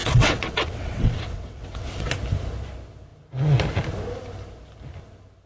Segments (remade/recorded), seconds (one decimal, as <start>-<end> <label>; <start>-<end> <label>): 0.0-2.1 remade; 2.1-5.5 recorded